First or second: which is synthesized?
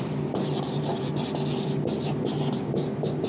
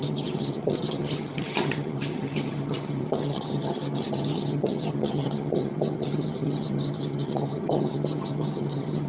second